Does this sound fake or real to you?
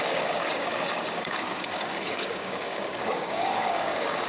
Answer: fake